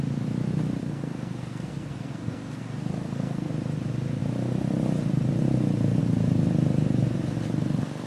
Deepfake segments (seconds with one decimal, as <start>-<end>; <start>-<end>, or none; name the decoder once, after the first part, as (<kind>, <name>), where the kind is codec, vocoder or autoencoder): 0.8-3.5 (codec, SNAC)